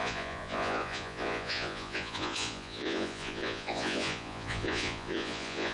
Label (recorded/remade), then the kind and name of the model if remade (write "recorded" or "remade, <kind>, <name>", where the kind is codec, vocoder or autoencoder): remade, vocoder, Vocos